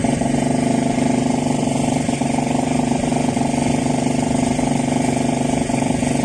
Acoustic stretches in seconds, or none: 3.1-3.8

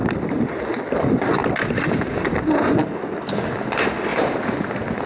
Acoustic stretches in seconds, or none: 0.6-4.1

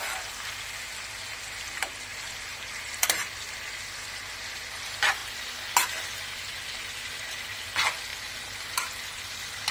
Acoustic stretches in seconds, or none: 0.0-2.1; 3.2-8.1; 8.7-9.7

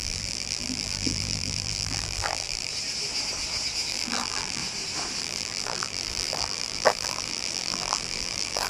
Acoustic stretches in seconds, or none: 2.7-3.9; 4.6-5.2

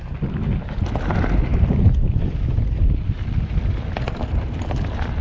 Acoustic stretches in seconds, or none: 0.0-1.5; 3.2-5.2